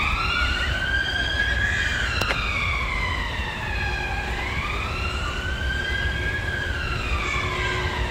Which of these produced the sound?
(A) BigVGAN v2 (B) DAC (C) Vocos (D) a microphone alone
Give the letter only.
D